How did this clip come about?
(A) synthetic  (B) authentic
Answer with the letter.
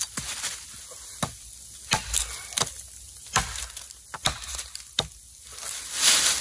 B